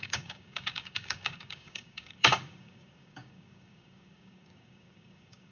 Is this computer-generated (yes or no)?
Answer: yes